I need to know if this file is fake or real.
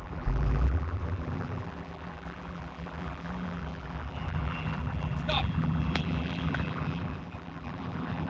fake